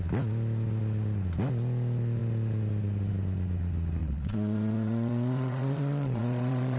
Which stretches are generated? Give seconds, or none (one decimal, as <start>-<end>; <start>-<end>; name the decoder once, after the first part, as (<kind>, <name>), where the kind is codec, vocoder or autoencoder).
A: 4.0-6.8 (vocoder, Vocos)